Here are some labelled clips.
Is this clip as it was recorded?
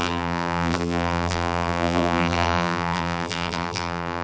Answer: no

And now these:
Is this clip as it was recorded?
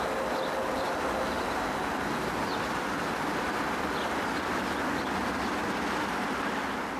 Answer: yes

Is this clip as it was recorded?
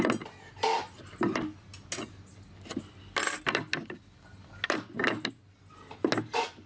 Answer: yes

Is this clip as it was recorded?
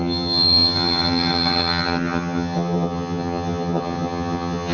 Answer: no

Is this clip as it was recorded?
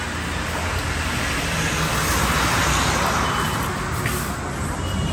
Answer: yes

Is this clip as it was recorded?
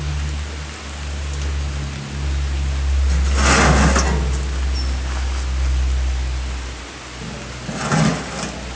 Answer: yes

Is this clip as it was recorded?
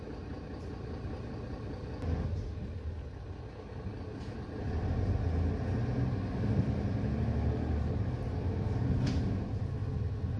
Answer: yes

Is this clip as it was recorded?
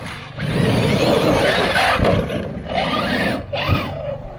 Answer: yes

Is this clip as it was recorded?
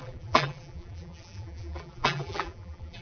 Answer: no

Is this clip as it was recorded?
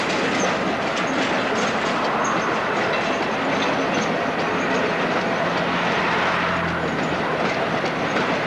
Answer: yes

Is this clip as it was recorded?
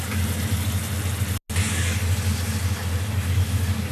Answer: yes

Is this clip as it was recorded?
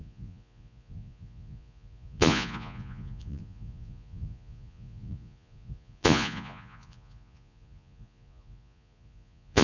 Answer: no